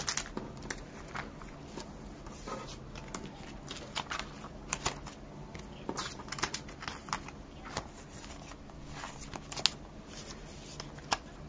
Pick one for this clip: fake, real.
real